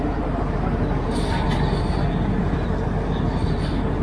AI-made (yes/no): no